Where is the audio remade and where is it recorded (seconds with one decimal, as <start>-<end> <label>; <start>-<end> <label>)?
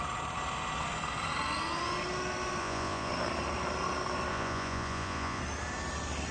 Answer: 0.0-2.6 recorded; 2.6-3.1 remade; 3.1-4.3 recorded; 4.3-5.4 remade; 5.4-6.3 recorded